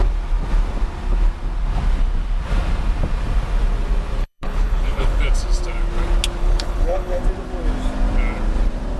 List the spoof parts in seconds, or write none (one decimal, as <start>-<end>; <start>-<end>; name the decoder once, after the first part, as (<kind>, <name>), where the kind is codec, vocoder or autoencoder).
4.2-5.2 (codec, HILCodec); 6.4-7.2